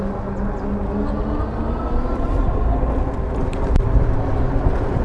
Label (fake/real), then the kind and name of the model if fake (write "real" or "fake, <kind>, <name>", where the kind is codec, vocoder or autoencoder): real